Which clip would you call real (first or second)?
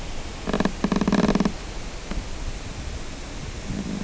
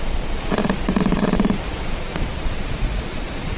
first